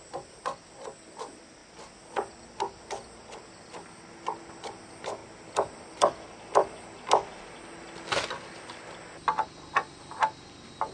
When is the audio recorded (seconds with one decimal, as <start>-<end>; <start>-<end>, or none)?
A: 0.0-10.9

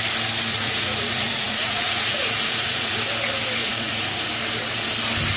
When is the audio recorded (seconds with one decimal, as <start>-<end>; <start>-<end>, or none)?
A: 0.0-0.5; 3.0-3.6; 4.3-5.4

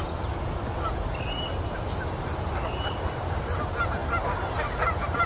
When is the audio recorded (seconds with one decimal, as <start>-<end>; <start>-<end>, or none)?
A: 0.0-4.0

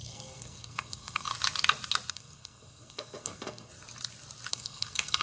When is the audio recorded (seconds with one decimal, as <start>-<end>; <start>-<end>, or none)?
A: 1.3-2.1; 3.7-4.5

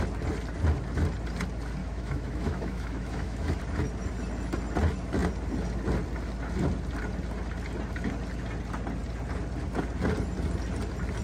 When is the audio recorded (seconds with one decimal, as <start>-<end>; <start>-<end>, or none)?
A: 0.0-1.8; 3.6-11.2

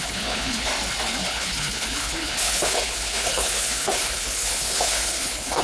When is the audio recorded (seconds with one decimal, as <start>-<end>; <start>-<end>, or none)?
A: 0.7-1.2

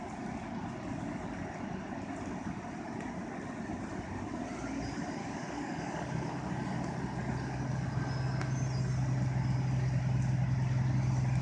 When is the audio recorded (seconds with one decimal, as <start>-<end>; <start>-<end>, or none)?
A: 0.0-5.2; 6.5-11.4